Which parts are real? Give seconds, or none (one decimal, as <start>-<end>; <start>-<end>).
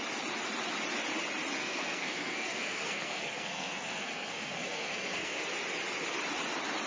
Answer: 0.0-1.6; 5.4-6.9